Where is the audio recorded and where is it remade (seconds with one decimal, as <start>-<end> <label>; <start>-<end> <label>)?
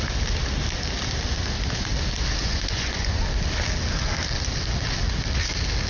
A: 0.0-2.4 recorded; 2.4-3.2 remade; 3.2-5.9 recorded